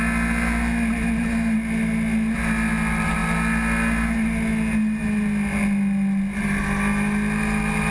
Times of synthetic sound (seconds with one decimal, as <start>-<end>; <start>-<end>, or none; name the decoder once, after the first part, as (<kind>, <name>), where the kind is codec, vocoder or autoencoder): none